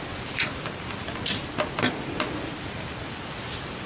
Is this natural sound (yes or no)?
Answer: yes